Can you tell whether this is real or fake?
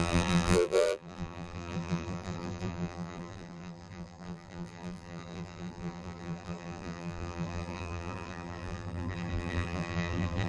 fake